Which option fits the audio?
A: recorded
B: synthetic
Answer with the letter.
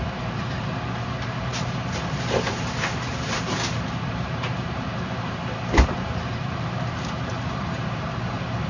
B